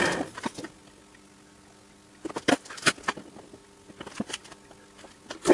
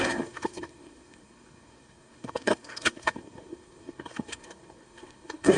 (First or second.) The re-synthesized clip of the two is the second